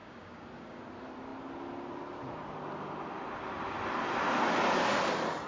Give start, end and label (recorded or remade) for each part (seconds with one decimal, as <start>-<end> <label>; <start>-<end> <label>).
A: 0.0-0.8 remade; 0.8-5.5 recorded